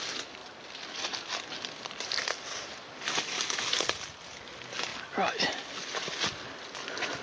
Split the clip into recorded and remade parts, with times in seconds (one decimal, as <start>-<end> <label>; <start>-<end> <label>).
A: 0.0-7.2 recorded